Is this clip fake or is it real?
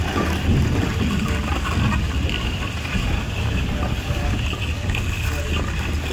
real